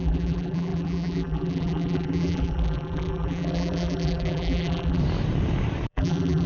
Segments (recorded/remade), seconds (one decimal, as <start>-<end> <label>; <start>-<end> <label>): 0.0-5.0 remade; 5.0-5.9 recorded; 5.9-6.5 remade